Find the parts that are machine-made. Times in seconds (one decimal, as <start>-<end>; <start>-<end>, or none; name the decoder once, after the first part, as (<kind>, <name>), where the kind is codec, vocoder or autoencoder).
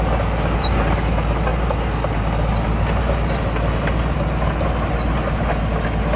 none